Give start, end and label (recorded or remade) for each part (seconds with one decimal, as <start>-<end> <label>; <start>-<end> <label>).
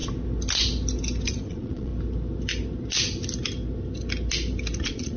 0.0-1.3 recorded; 1.3-1.9 remade; 1.9-4.8 recorded; 4.8-5.2 remade